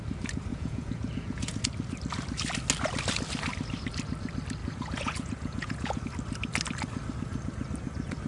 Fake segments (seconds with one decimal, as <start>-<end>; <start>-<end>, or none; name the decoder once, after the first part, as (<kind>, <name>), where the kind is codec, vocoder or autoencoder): 0.5-1.6 (vocoder, Vocos); 4.6-6.0